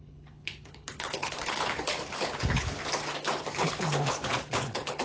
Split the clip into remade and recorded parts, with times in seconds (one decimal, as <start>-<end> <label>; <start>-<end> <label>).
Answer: 0.0-2.8 remade; 2.8-3.4 recorded; 3.4-5.0 remade